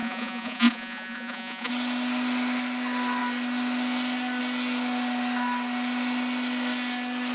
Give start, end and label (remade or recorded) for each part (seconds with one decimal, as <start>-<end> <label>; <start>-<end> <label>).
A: 0.0-1.7 remade; 1.7-7.3 recorded